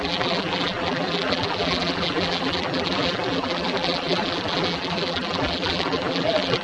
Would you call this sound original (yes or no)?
no